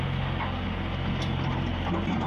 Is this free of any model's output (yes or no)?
yes